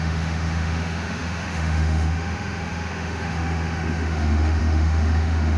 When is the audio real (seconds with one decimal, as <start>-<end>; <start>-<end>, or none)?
none